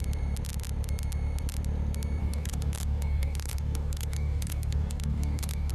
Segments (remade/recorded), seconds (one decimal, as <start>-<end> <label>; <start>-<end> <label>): 0.0-2.2 recorded; 2.2-5.7 remade